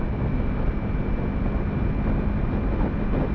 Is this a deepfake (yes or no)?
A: no